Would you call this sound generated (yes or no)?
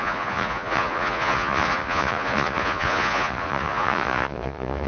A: yes